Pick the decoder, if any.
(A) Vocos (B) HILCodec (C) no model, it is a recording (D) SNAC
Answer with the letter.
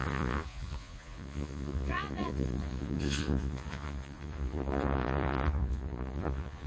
A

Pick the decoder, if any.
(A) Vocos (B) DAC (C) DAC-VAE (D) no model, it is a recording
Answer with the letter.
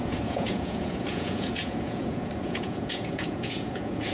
A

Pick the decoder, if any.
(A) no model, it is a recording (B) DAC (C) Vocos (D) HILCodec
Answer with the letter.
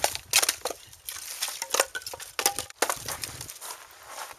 A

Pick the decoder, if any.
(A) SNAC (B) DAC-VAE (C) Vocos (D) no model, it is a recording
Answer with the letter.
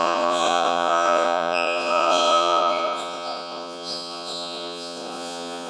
C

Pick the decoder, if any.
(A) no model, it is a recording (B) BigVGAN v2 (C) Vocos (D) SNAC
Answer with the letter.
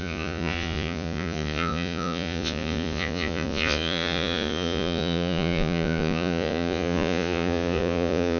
C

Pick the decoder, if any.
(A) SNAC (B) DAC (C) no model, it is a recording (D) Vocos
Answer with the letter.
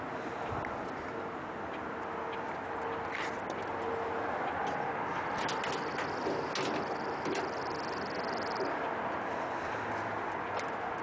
C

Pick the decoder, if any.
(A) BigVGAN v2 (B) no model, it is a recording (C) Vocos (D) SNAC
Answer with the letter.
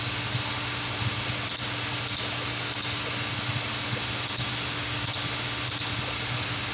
B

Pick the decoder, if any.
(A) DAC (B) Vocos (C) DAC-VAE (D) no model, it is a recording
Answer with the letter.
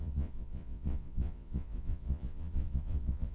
B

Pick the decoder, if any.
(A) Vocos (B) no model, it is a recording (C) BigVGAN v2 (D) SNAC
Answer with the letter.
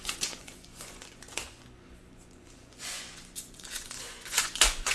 A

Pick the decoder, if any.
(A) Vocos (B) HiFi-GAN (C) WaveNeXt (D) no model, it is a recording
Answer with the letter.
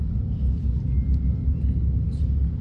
D